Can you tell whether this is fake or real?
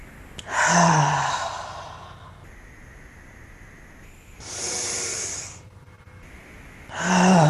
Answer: real